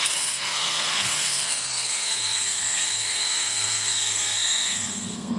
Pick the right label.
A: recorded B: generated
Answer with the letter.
B